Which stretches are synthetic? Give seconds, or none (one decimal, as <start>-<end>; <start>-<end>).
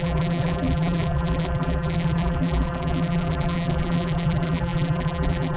0.0-5.6